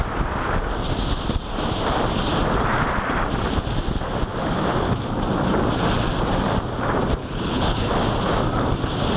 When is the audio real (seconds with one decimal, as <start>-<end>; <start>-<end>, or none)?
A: 0.0-7.2; 7.9-9.2